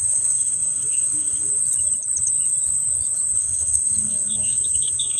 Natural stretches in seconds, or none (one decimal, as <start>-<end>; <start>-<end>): 1.5-3.4